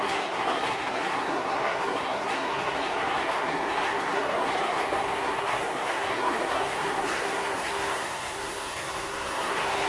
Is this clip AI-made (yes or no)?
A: yes